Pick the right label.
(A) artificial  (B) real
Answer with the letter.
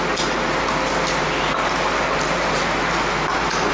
B